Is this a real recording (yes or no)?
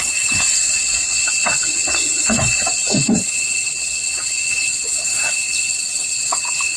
no